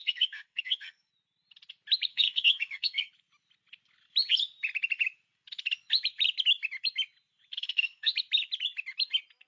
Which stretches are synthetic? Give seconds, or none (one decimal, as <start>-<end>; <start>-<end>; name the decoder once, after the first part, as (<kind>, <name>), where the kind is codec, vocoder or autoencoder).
0.0-1.1 (codec, SNAC); 2.1-3.1; 7.6-8.1